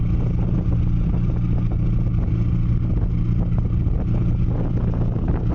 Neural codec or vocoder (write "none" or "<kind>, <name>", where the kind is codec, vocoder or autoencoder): none